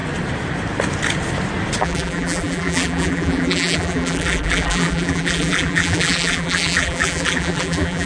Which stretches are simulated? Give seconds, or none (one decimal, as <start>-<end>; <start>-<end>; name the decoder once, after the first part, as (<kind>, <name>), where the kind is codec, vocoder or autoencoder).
1.8-8.1 (vocoder, BigVGAN v2)